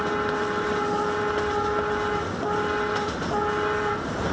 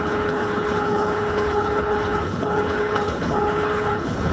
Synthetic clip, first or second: second